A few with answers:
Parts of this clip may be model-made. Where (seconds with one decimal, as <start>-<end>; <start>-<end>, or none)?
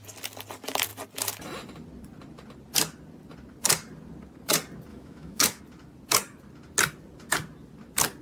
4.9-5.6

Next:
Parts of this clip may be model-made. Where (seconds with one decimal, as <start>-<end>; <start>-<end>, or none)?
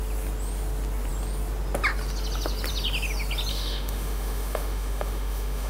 3.5-5.7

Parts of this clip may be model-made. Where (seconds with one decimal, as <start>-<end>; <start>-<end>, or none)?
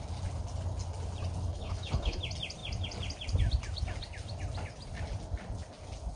1.5-2.2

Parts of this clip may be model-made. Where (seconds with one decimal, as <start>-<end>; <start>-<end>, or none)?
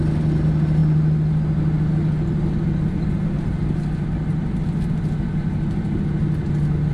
none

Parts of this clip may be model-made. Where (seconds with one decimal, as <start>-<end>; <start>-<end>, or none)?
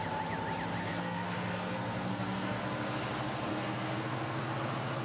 0.8-2.6; 3.5-4.4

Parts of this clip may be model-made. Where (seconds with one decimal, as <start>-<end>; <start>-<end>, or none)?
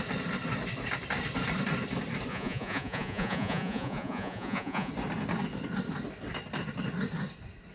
2.3-4.9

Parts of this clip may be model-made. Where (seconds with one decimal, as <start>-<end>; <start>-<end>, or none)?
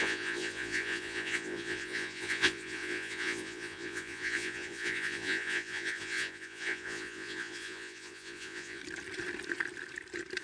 0.0-8.8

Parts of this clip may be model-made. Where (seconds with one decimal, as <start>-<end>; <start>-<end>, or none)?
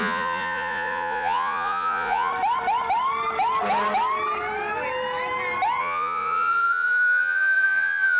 0.0-2.3; 5.8-8.2